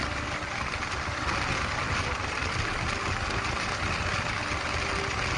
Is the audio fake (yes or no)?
no